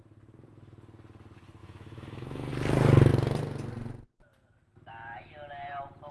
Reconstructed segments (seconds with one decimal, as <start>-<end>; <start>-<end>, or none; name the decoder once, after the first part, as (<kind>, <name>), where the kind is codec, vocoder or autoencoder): 1.6-2.5 (autoencoder, DAC-VAE)